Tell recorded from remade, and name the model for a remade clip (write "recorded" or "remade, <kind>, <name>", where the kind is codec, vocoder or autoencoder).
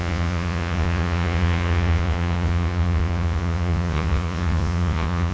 remade, vocoder, Vocos